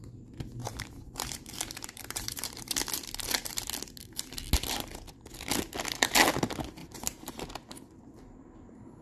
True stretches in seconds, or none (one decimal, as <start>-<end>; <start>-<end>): 0.0-0.6; 2.8-6.8; 7.4-9.0